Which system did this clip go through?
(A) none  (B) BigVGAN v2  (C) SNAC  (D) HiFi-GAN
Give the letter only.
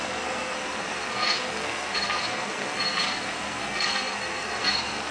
C